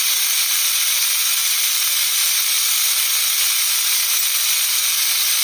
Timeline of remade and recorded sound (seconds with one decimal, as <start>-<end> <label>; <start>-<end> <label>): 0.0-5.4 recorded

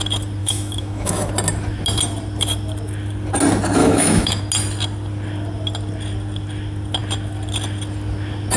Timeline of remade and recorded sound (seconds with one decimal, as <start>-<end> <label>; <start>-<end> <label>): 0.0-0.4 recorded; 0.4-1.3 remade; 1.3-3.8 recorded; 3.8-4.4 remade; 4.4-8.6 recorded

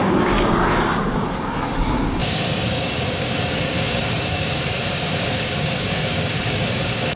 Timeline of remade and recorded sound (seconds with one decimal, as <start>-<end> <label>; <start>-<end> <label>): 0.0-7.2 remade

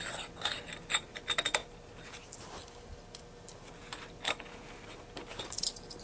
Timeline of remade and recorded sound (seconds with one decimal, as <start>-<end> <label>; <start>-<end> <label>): 0.0-6.0 recorded